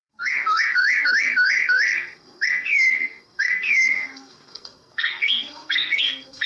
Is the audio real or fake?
fake